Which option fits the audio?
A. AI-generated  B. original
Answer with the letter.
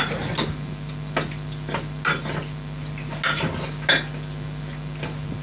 B